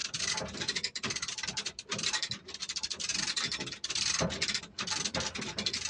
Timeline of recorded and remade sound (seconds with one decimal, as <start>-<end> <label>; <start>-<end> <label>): 0.0-1.7 remade; 1.7-5.9 recorded